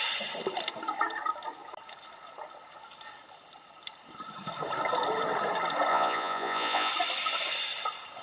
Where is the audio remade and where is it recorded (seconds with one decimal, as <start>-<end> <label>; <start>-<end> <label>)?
0.0-5.9 recorded; 5.9-6.9 remade; 6.9-8.2 recorded